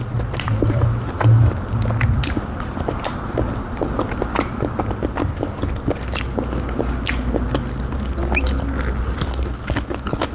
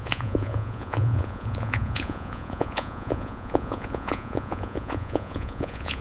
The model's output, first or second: second